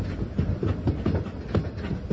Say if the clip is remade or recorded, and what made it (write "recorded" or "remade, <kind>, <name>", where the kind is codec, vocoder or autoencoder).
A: recorded